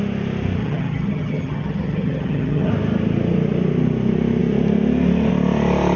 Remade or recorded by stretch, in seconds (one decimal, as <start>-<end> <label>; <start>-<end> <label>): 0.0-0.6 recorded; 0.6-2.7 remade; 2.7-6.0 recorded